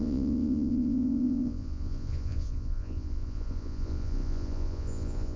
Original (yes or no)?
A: no